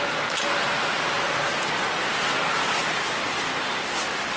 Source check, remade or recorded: recorded